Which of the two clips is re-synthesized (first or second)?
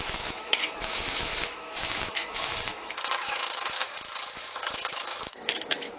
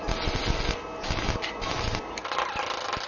first